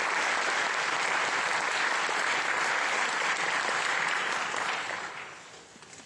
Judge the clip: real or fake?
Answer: real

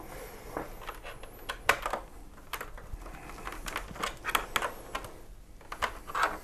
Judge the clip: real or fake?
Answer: real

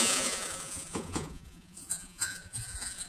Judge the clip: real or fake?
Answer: fake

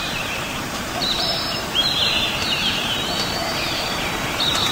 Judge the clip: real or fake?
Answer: fake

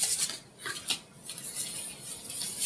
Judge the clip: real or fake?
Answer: real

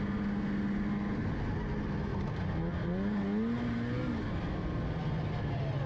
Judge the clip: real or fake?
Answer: real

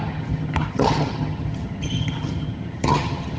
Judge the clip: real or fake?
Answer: fake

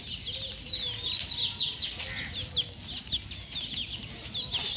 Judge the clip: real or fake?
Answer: real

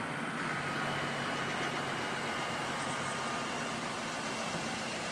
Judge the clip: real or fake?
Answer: real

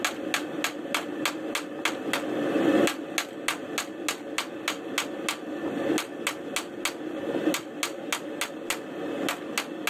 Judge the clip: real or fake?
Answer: real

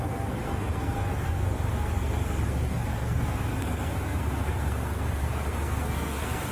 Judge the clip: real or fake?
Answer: fake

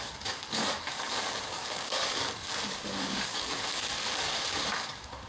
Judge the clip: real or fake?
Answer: fake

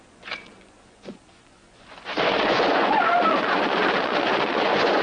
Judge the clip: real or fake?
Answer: fake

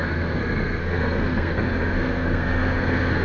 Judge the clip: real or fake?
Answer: fake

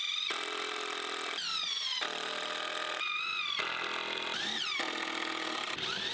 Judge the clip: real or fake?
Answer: real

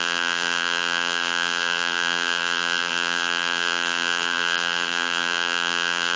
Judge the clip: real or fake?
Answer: fake